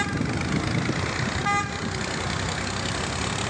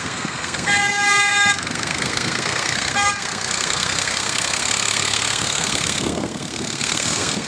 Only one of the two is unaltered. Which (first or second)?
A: first